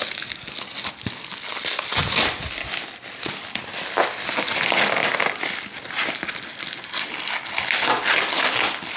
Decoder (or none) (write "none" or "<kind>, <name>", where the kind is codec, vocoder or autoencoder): none